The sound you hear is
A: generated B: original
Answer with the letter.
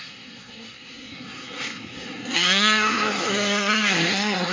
A